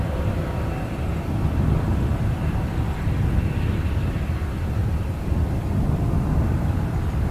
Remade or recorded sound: recorded